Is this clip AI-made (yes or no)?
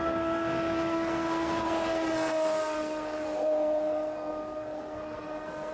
yes